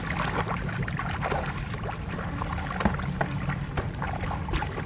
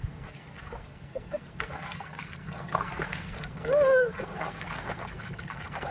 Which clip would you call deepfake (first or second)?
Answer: second